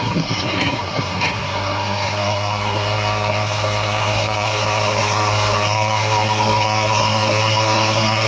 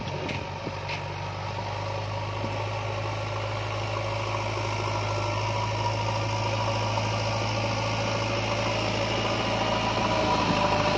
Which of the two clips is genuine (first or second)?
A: second